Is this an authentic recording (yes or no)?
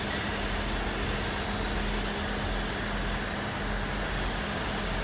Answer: yes